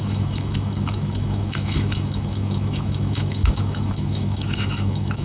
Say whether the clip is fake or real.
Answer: fake